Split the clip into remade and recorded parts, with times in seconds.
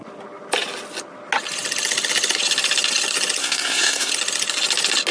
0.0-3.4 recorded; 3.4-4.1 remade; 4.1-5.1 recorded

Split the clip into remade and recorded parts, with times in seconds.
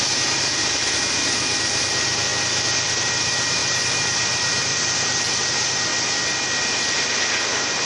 0.0-2.3 remade; 2.3-3.0 recorded; 3.0-5.9 remade; 5.9-7.5 recorded; 7.5-7.9 remade